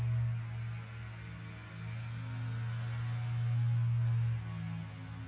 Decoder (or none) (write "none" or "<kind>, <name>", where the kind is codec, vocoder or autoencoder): none